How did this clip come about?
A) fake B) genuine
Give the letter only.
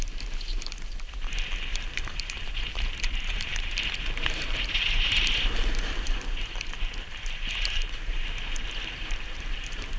A